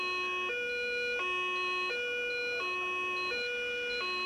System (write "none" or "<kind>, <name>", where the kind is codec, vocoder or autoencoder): none